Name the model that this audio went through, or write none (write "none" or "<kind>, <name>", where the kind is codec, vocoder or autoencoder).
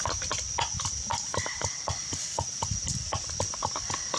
none